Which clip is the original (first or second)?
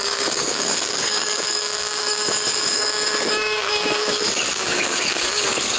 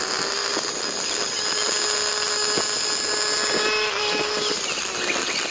second